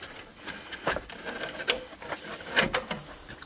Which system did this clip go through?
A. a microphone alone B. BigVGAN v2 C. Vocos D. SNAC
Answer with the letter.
A